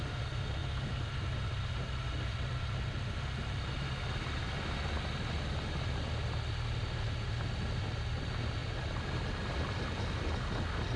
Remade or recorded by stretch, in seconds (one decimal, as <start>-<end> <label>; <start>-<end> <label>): 0.0-11.0 recorded